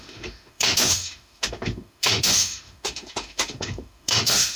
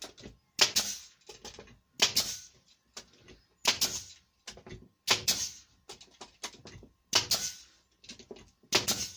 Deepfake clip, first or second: first